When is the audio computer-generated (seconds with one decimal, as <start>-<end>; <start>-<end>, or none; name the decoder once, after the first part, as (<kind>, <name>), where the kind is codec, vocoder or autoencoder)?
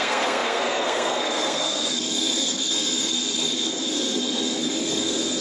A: 0.0-5.4 (codec, SNAC)